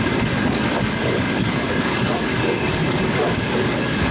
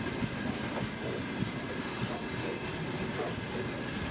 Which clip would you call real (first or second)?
second